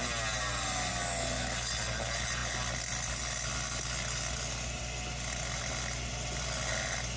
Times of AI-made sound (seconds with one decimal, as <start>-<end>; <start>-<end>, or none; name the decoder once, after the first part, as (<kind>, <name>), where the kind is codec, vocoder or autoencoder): none